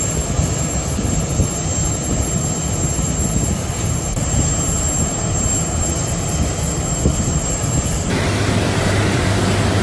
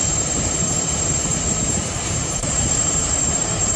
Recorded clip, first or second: first